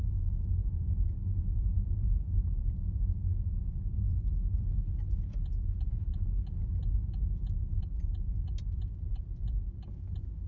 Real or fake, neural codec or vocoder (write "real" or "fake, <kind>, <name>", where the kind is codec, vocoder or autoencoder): real